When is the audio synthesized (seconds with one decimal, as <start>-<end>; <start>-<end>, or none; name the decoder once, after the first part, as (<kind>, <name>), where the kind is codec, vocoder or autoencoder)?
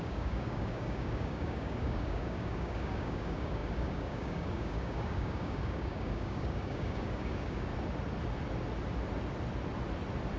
0.0-7.7 (codec, DAC)